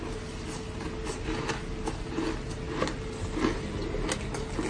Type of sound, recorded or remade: recorded